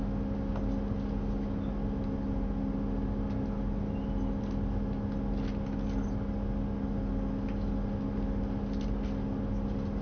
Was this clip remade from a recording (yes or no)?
no